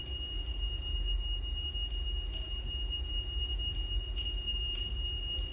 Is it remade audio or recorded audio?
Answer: recorded